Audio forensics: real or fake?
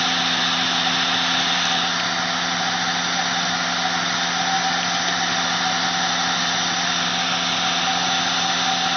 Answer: real